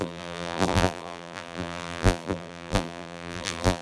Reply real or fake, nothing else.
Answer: fake